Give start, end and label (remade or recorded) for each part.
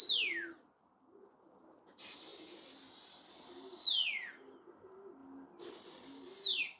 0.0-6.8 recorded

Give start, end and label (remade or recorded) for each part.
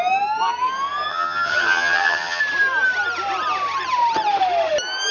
0.0-1.1 recorded; 1.1-2.4 remade; 2.4-5.1 recorded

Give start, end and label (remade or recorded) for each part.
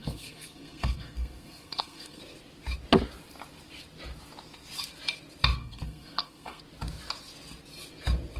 0.0-2.2 remade; 2.2-5.6 recorded; 5.6-6.6 remade; 6.6-8.4 recorded